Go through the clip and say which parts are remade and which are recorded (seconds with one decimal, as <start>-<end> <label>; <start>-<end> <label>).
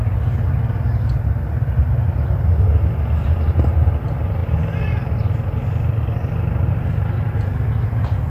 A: 0.0-3.2 recorded; 3.2-3.9 remade; 3.9-8.3 recorded